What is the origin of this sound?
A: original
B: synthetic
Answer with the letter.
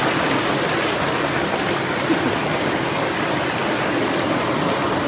A